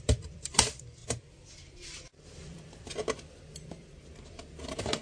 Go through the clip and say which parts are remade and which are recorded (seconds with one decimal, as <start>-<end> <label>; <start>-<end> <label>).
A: 0.0-1.0 remade; 1.0-1.5 recorded; 1.5-3.0 remade; 3.0-4.0 recorded; 4.0-5.0 remade